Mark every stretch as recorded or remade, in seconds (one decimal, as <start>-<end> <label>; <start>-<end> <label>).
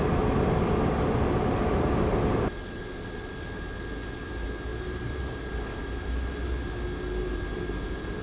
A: 0.0-4.7 recorded; 4.7-5.5 remade; 5.5-8.2 recorded